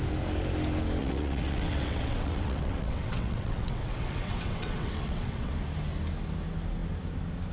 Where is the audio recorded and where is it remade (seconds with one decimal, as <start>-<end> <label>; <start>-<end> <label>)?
0.0-1.0 recorded; 1.0-5.5 remade; 5.5-7.5 recorded